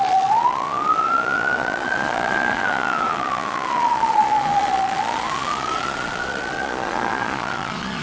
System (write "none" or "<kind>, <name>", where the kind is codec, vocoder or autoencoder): vocoder, Vocos